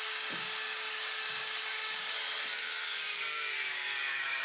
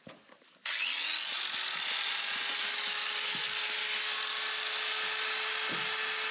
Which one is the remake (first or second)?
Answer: first